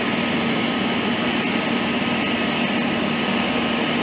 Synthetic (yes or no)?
no